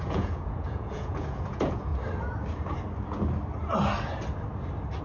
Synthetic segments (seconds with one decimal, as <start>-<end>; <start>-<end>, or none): 0.0-1.9

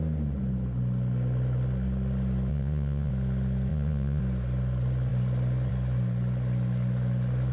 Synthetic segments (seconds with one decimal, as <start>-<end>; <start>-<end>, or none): 2.5-3.1; 3.7-4.2

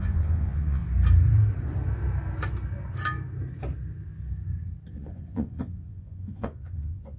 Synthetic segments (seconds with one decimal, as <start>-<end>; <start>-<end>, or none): 0.0-0.8; 4.9-7.2

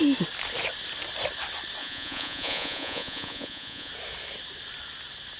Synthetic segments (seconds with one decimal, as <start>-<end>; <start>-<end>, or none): 1.8-3.9

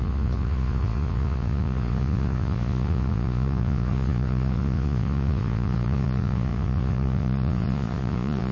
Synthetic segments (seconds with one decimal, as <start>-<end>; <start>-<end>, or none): 0.0-8.5

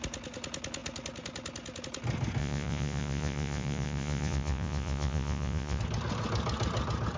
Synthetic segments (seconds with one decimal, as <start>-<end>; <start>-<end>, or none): 2.4-5.8